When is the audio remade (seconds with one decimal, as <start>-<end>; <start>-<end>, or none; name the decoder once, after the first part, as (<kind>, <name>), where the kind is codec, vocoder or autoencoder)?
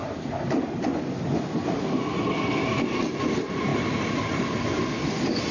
none